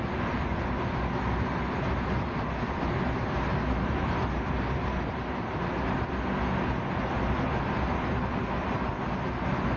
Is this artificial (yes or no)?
no